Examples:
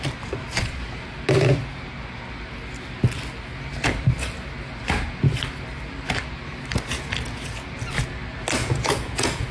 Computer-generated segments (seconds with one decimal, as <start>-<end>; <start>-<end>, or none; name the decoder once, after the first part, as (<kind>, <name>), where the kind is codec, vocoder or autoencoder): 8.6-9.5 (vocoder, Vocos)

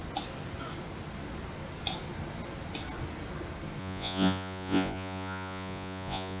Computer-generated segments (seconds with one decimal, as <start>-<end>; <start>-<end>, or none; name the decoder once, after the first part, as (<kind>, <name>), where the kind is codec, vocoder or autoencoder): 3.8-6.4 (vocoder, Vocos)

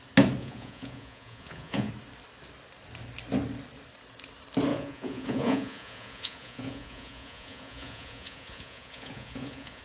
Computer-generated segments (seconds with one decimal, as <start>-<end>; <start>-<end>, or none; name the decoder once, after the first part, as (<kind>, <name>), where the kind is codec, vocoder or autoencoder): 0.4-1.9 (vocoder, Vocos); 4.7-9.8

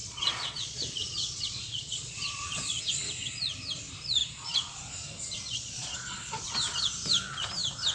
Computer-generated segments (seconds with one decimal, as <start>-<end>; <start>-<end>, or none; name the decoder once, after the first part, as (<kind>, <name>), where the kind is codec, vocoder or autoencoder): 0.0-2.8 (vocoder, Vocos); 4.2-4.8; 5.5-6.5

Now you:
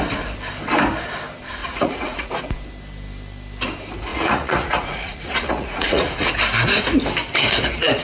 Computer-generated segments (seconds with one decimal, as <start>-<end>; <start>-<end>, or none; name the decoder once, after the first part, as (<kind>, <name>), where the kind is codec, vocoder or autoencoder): 1.6-2.4 (vocoder, Vocos); 4.1-6.3

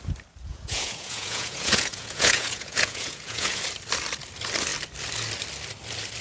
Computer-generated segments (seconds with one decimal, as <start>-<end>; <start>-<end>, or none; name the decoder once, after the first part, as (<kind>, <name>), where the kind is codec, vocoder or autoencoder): 0.5-3.6 (vocoder, Vocos)

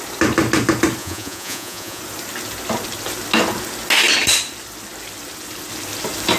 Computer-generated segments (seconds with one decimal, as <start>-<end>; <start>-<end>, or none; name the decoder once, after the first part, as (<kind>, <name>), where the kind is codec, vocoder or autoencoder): 1.0-2.0 (vocoder, Vocos)

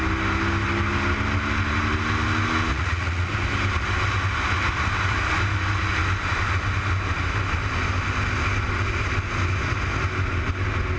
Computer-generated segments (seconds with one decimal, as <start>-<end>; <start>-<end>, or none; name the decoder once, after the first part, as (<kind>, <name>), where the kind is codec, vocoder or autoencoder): 2.7-3.3 (vocoder, Vocos)